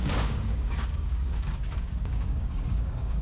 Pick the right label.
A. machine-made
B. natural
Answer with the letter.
A